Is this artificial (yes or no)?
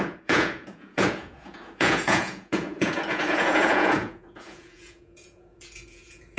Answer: yes